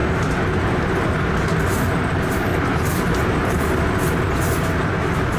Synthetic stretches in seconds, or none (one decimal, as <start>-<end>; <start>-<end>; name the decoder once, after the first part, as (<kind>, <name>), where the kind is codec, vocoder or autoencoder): 2.5-4.2 (vocoder, BigVGAN v2)